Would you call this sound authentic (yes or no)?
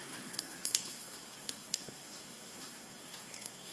no